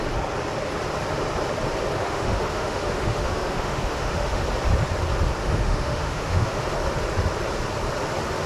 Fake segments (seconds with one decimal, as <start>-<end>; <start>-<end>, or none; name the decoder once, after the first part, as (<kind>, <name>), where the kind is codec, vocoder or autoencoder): 2.0-4.4 (autoencoder, DAC-VAE); 5.4-6.6